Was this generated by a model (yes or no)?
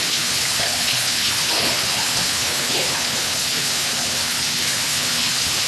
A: yes